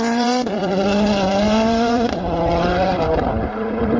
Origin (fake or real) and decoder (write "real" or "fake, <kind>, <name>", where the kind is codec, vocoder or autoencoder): fake, vocoder, BigVGAN v2